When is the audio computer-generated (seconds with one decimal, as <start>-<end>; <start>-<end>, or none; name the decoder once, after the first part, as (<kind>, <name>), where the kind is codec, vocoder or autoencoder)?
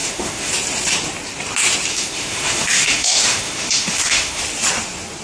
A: 0.0-0.5 (autoencoder, DAC-VAE); 1.9-4.4